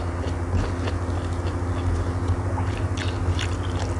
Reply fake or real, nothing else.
real